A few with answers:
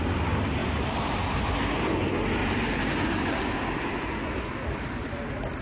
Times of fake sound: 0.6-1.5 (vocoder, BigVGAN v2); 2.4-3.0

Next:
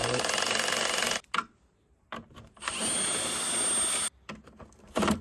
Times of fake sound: 0.0-2.8 (vocoder, BigVGAN v2)

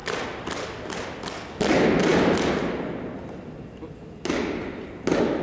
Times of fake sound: none

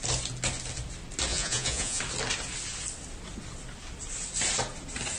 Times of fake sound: 1.3-2.0 (vocoder, Vocos)

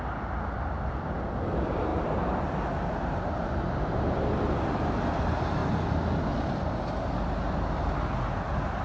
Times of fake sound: none

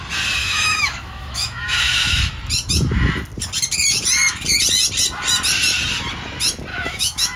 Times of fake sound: 0.4-2.2 (autoencoder, DAC-VAE); 6.7-7.4

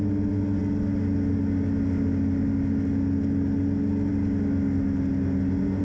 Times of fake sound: none

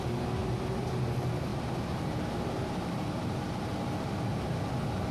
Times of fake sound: 1.5-3.6 (vocoder, BigVGAN v2)